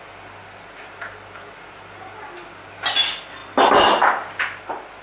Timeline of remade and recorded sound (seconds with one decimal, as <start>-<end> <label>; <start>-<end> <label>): 0.0-5.0 recorded